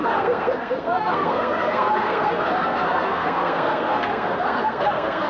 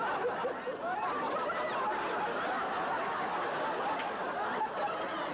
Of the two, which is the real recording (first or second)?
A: second